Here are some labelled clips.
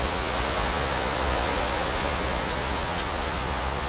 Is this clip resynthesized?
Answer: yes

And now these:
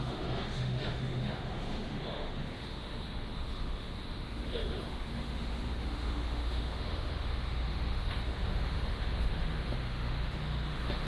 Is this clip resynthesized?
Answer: yes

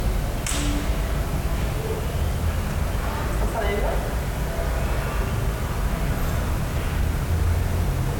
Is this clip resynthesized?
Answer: no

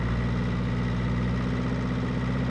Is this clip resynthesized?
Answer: no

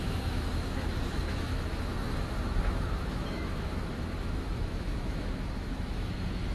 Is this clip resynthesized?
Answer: yes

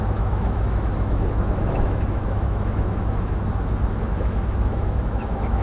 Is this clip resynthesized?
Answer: yes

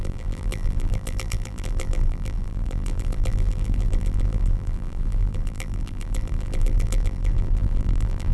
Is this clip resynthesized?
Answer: yes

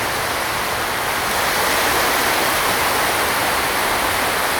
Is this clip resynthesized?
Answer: no